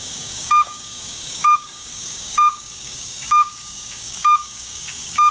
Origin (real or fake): fake